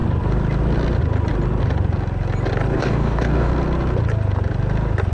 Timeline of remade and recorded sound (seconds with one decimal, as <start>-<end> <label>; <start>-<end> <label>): 0.0-2.7 recorded; 2.7-3.5 remade; 3.5-5.1 recorded